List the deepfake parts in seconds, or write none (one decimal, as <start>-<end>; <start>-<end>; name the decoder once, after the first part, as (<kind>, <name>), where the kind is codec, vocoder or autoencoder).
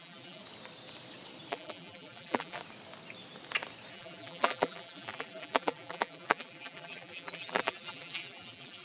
0.0-0.4 (vocoder, BigVGAN v2); 1.5-2.6; 3.9-8.8